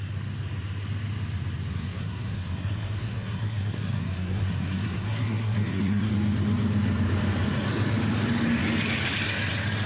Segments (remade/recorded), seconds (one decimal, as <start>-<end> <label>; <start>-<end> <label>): 0.0-1.7 recorded; 1.7-6.1 remade; 6.1-9.9 recorded